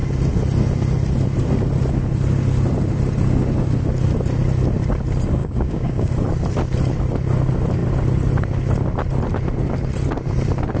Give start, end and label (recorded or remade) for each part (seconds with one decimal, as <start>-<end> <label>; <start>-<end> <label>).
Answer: 0.0-5.4 recorded; 5.4-6.1 remade; 6.1-10.8 recorded